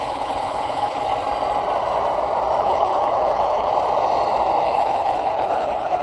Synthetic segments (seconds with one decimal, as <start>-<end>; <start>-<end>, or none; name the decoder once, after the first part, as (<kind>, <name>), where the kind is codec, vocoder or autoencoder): 0.0-1.1 (codec, HILCodec); 2.6-3.7; 4.6-6.0